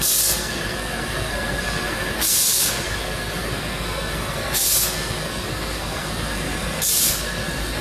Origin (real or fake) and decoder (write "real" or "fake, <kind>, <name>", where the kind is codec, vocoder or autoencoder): fake, codec, SNAC